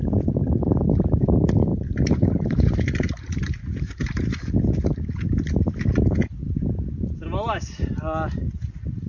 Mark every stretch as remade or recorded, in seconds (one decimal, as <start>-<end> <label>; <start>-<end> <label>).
0.0-1.7 recorded; 1.7-4.5 remade; 4.5-9.1 recorded